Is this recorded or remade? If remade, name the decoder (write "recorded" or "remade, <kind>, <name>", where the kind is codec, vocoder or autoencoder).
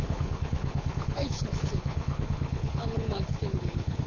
remade, codec, HILCodec